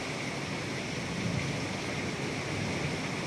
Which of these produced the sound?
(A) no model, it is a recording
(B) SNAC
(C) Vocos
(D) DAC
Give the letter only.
A